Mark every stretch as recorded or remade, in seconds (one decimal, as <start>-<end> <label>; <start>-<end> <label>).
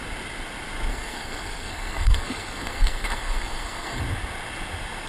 0.0-0.9 recorded; 0.9-4.0 remade; 4.0-5.1 recorded